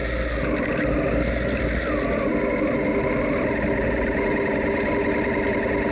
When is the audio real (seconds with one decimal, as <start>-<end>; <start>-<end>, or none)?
0.0-5.9